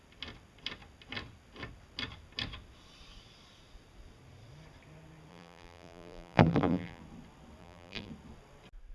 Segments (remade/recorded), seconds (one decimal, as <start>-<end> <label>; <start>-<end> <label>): 0.0-5.3 recorded; 5.3-7.0 remade; 7.0-7.6 recorded; 7.6-8.1 remade; 8.1-8.9 recorded